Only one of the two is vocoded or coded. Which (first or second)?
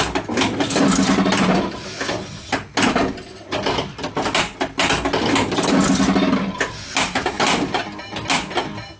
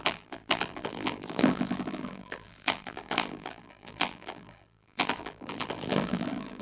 second